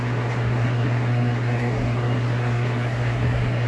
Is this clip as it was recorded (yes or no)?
no